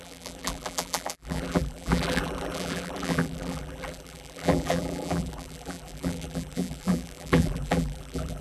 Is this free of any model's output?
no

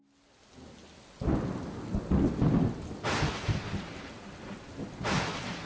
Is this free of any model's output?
yes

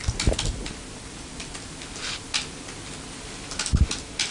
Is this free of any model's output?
yes